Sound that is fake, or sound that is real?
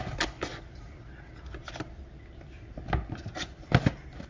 real